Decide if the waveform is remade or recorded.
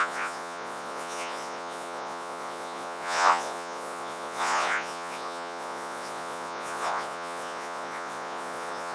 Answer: remade